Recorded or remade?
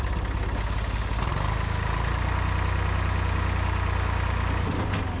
recorded